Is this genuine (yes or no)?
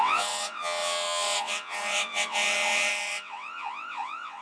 no